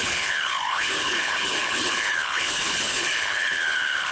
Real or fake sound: fake